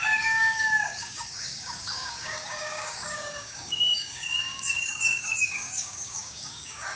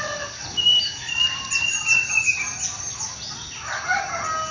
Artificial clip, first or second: first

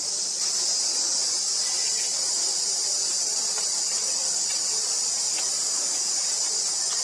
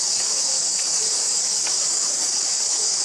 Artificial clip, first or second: second